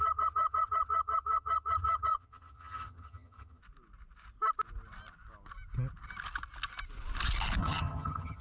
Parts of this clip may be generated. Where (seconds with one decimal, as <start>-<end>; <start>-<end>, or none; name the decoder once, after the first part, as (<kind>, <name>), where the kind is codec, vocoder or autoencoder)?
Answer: 0.0-3.6 (vocoder, HiFi-GAN); 7.6-8.4